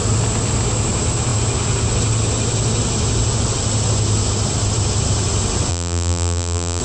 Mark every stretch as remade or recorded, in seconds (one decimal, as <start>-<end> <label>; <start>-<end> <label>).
0.0-5.7 recorded; 5.7-6.8 remade